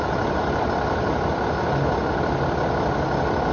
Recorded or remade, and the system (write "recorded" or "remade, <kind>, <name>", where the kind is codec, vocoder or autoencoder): recorded